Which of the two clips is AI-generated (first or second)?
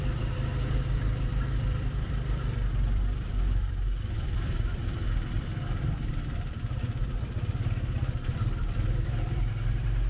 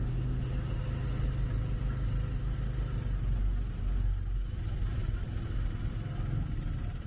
first